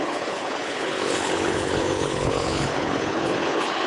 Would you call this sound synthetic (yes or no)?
yes